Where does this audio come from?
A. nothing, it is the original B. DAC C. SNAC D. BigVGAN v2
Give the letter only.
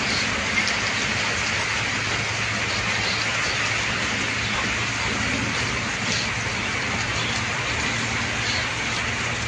A